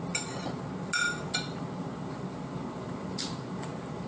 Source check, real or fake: real